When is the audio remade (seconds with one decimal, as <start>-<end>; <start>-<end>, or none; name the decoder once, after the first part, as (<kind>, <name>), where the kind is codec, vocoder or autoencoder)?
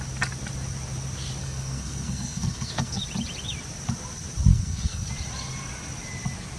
1.4-3.0 (codec, SNAC); 4.5-5.1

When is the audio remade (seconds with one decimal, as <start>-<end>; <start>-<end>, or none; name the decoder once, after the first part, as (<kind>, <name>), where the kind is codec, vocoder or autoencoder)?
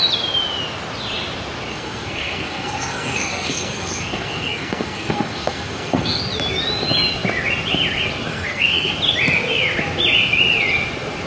1.7-6.2 (codec, SNAC); 8.3-8.9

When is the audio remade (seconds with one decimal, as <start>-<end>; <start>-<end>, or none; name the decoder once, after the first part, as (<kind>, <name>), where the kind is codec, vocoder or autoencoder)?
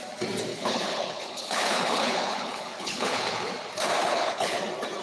0.5-3.5 (codec, HILCodec); 4.0-4.6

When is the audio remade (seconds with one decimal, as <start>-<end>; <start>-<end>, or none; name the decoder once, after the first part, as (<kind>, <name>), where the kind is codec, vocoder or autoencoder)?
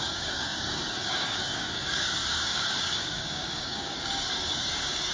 0.0-5.1 (codec, DAC)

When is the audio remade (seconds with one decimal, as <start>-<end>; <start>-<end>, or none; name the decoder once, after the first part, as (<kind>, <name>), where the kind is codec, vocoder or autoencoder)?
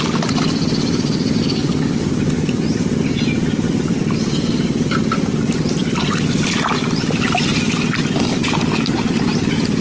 none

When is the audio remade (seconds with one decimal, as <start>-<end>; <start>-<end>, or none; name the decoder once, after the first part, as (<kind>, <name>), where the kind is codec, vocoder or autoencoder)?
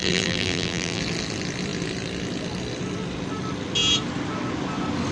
0.0-1.0 (vocoder, BigVGAN v2)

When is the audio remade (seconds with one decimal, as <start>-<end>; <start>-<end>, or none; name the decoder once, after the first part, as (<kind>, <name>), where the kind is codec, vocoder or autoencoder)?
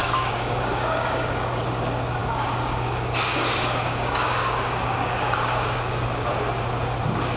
0.0-1.6 (codec, DAC); 2.2-6.3